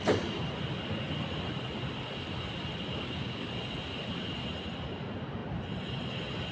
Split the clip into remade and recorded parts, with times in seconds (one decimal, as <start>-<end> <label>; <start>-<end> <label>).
0.0-2.9 recorded; 2.9-3.5 remade; 3.5-6.5 recorded